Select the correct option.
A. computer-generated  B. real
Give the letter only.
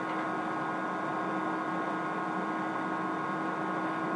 B